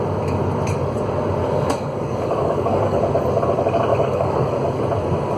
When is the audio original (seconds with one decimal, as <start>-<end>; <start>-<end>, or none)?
0.0-1.4; 3.0-3.9; 4.8-5.4